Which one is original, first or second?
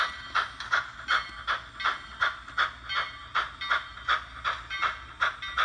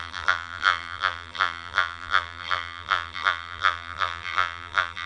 first